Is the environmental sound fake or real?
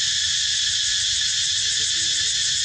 real